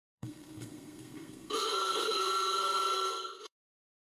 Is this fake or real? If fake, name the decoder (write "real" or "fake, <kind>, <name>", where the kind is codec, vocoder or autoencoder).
fake, codec, SNAC